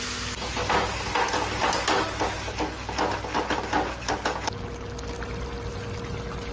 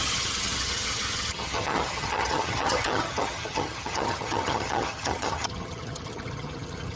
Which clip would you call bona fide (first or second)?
first